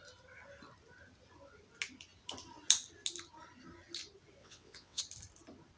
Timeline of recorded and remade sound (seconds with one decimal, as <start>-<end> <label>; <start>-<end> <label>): 0.0-4.4 recorded; 4.4-5.0 remade; 5.0-5.8 recorded